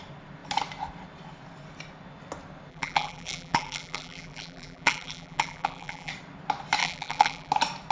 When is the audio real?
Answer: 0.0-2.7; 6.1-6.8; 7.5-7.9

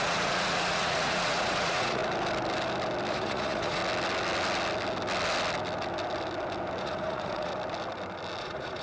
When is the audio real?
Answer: 2.0-3.1; 3.8-6.8; 7.5-8.4

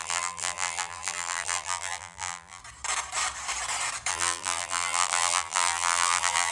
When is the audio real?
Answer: 2.6-4.1

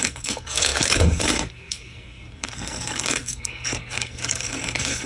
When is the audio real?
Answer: none